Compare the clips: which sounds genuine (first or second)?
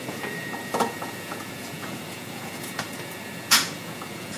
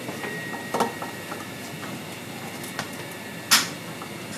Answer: second